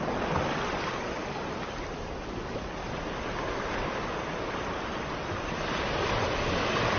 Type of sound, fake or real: real